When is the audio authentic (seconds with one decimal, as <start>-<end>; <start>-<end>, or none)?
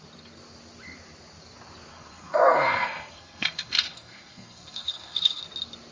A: 0.0-1.9; 5.4-5.9